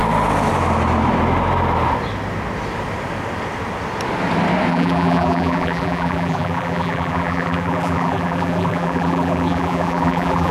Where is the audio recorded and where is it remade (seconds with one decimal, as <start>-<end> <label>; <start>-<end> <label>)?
0.0-4.7 recorded; 4.7-10.5 remade